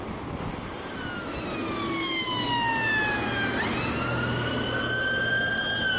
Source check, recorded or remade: recorded